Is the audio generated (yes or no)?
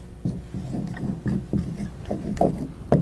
no